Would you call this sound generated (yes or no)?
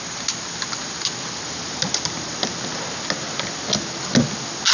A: no